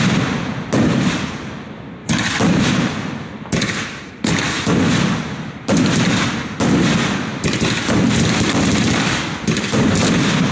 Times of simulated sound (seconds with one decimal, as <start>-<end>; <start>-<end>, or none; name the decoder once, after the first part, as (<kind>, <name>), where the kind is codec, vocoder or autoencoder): 2.0-6.7 (vocoder, BigVGAN v2); 7.3-10.5